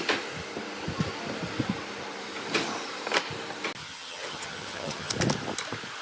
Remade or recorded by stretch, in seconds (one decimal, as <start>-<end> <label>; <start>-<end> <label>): 0.0-3.8 recorded; 3.8-5.1 remade; 5.1-6.0 recorded